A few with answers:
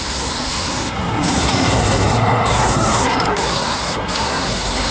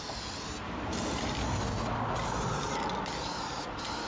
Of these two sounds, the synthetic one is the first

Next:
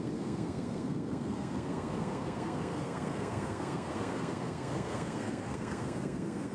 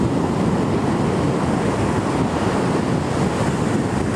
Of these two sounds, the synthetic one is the first